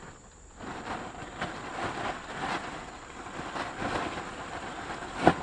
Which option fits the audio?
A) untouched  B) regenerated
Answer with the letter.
A